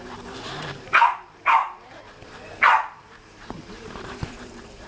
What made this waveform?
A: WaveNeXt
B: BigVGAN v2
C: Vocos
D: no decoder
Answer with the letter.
B